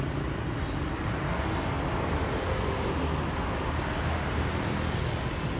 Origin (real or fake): real